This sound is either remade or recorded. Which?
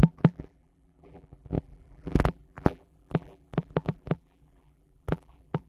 remade